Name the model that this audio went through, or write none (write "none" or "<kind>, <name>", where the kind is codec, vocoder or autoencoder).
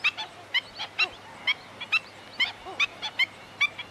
none